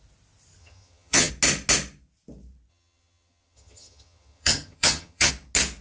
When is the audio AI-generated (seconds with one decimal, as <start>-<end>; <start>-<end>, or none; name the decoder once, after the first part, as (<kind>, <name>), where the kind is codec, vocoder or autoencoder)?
0.6-1.3 (vocoder, HiFi-GAN); 2.7-5.3